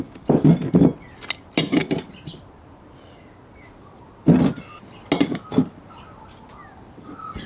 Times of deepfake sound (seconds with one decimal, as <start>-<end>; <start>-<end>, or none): none